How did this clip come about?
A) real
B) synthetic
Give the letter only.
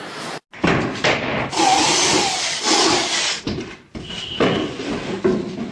A